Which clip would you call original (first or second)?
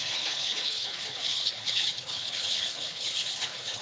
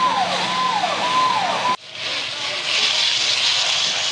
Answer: second